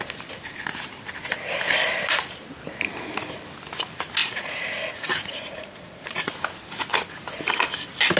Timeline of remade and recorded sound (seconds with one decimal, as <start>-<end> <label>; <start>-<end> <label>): 0.0-4.2 recorded; 4.2-6.3 remade; 6.3-8.2 recorded